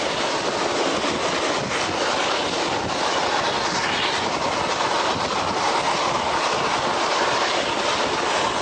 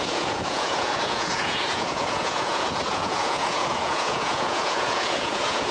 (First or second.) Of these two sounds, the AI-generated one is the second